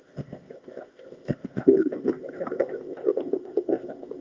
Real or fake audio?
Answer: fake